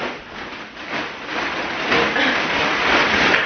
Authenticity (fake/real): real